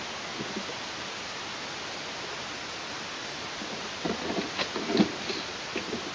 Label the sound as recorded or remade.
recorded